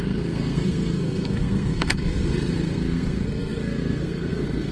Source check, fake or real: fake